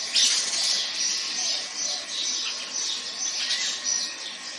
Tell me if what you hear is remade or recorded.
recorded